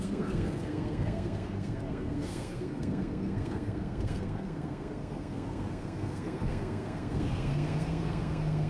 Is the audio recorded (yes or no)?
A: no